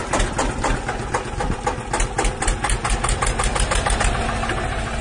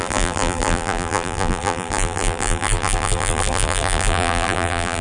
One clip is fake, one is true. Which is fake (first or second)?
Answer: second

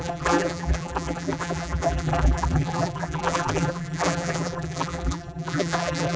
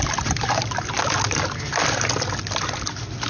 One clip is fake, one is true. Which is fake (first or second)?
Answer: first